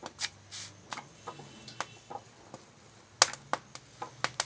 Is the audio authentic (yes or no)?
yes